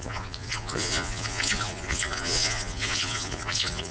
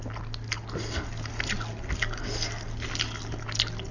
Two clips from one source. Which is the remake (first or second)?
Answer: first